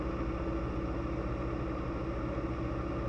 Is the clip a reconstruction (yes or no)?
no